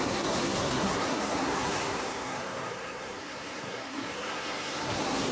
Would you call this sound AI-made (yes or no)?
yes